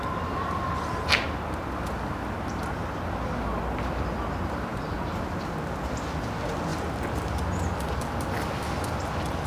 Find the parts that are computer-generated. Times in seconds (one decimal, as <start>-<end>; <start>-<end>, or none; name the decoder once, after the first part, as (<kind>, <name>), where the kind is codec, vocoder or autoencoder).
none